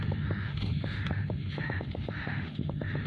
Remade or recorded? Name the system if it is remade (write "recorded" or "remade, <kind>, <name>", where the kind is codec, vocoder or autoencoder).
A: remade, autoencoder, DAC-VAE